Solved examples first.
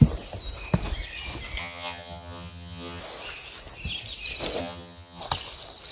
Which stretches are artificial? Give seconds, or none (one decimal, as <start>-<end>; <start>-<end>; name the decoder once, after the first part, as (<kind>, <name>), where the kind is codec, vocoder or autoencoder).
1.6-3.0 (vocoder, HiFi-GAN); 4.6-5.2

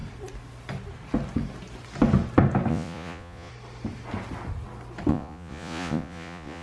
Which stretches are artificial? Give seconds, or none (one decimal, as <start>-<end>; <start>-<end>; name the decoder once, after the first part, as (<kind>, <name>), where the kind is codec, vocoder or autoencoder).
2.7-3.5 (vocoder, Vocos); 5.1-6.6

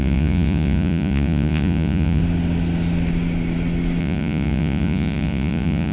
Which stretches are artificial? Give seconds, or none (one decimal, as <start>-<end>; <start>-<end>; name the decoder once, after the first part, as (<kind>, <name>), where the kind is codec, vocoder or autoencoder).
0.0-2.2 (vocoder, Vocos); 4.0-5.9

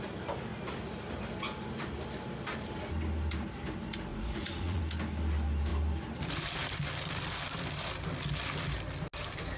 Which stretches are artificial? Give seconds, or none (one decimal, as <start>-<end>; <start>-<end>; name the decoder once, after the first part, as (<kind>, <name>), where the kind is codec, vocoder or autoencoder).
4.1-4.8 (vocoder, Vocos)

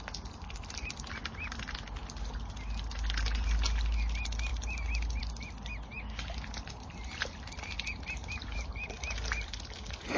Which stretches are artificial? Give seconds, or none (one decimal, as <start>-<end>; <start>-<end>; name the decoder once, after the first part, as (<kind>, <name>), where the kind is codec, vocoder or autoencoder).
none